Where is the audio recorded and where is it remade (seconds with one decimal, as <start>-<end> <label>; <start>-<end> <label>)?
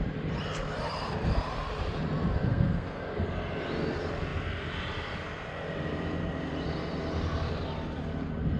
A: 0.0-2.5 recorded; 2.5-3.0 remade; 3.0-8.6 recorded